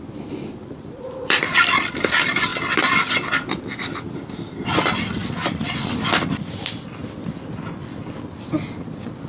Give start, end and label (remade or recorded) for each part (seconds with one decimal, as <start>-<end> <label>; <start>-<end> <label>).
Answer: 0.0-2.5 remade; 2.5-3.7 recorded; 3.7-7.0 remade; 7.0-9.3 recorded